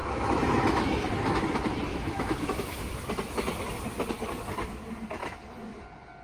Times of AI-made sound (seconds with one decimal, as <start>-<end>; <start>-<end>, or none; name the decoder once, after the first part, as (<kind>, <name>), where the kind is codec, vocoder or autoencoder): 0.0-1.1 (autoencoder, DAC-VAE); 1.9-3.1; 5.2-5.8